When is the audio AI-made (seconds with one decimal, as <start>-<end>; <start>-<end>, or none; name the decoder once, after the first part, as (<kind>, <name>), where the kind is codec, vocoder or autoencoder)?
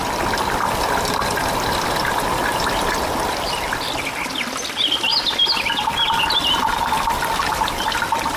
none